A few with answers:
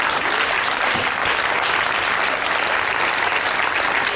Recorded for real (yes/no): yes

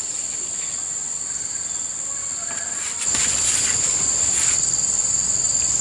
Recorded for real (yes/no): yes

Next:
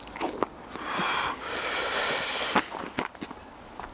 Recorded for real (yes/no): yes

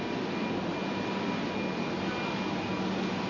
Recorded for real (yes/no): yes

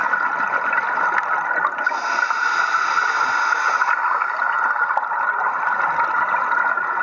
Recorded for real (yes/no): yes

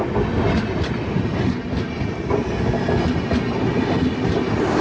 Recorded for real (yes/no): yes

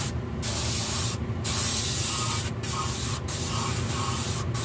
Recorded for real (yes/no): yes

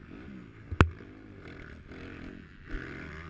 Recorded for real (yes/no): yes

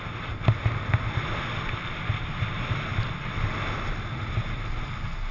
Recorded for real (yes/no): yes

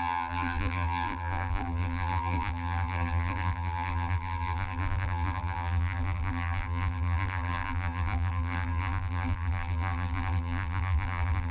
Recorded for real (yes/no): no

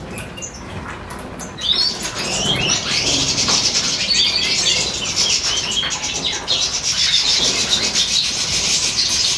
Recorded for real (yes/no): yes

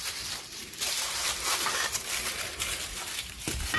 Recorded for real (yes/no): no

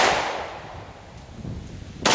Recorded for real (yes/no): yes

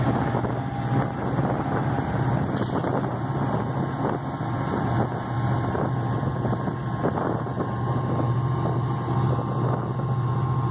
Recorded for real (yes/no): yes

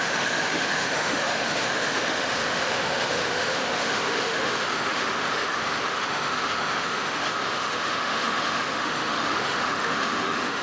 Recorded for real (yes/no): no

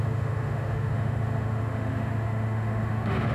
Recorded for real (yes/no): no